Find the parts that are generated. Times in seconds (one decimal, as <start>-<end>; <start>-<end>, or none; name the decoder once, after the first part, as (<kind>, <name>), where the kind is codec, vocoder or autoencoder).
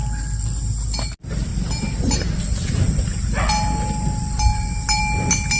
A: none